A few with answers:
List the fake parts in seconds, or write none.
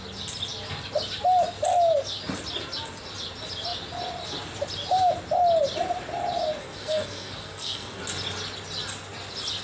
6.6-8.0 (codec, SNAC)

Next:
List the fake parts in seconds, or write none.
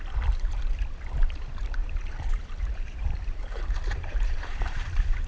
1.8-5.3 (vocoder, BigVGAN v2)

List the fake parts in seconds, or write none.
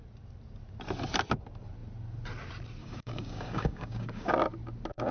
2.8-4.3 (codec, DAC)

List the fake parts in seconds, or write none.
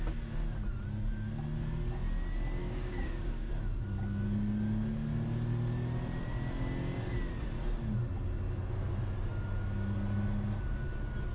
2.6-3.5 (codec, DAC)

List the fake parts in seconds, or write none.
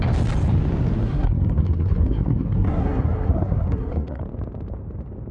1.0-4.2 (codec, SNAC)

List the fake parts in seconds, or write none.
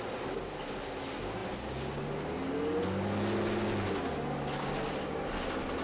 none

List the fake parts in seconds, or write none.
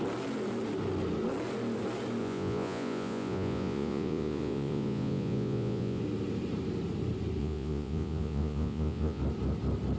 2.2-6.0 (vocoder, Vocos); 7.4-9.2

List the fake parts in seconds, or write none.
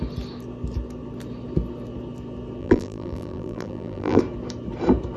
2.6-4.2 (vocoder, BigVGAN v2)